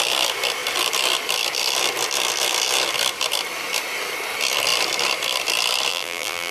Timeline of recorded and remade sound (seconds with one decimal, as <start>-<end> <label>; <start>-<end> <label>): 0.0-5.9 recorded; 5.9-6.5 remade